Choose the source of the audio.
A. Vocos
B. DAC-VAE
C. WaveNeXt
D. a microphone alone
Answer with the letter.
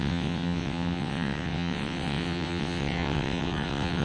C